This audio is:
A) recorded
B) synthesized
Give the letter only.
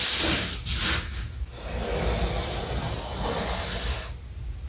A